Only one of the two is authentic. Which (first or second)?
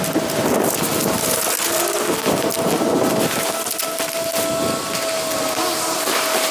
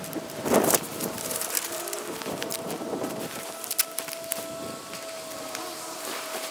first